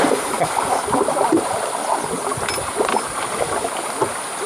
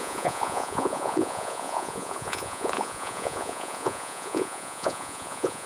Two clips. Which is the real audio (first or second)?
first